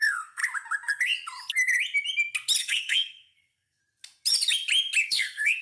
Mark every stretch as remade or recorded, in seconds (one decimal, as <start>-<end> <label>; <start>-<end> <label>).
0.0-0.4 remade; 0.4-2.6 recorded; 2.6-3.8 remade; 3.8-5.0 recorded; 5.0-5.6 remade